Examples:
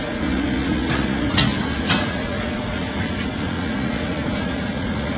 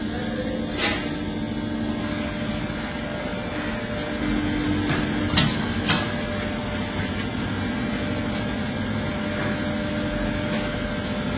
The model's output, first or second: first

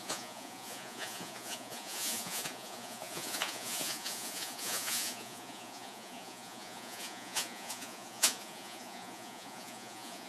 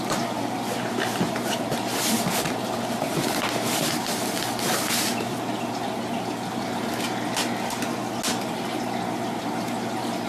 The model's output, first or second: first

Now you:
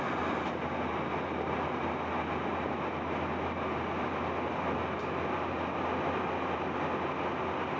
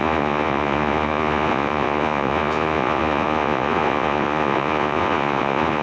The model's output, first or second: second